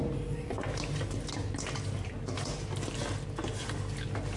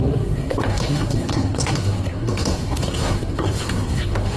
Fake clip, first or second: second